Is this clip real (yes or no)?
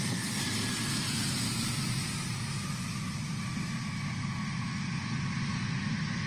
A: yes